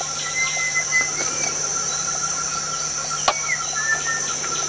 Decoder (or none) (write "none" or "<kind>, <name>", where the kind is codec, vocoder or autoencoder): none